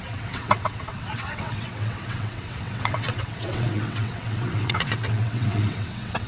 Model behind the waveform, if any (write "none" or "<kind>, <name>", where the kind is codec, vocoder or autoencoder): vocoder, WaveNeXt